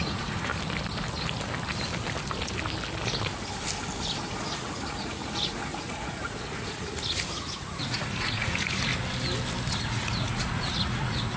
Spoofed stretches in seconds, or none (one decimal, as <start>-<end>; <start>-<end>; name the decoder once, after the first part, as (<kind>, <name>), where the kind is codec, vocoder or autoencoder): 0.0-0.5 (vocoder, Vocos); 4.3-8.9; 9.7-11.4